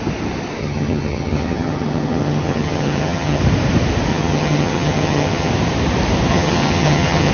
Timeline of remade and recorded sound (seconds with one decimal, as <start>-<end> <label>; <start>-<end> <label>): 0.0-0.6 recorded; 0.6-3.4 remade; 3.4-4.1 recorded; 4.1-5.5 remade; 5.5-6.3 recorded; 6.3-7.3 remade